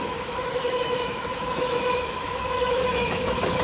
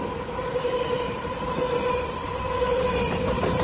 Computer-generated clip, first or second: first